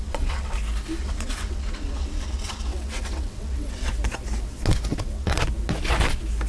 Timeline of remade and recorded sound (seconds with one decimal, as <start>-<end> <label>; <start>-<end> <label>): 0.0-0.6 remade; 0.6-1.0 recorded; 1.0-3.9 remade; 3.9-4.9 recorded; 4.9-5.4 remade; 5.4-6.5 recorded